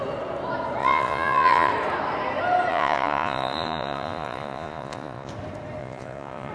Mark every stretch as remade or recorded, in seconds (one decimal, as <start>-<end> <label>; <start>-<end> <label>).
0.0-0.8 recorded; 0.8-1.7 remade; 1.7-2.7 recorded; 2.7-5.3 remade; 5.3-5.8 recorded; 5.8-6.5 remade